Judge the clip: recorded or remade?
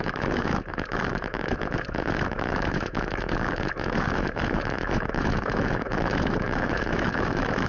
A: remade